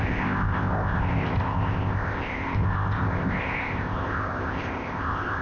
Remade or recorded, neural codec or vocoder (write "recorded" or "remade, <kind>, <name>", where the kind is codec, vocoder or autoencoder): remade, codec, ZipCodec